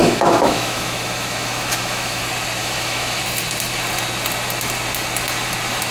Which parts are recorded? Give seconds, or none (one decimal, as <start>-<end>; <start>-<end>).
2.2-2.6; 3.2-5.9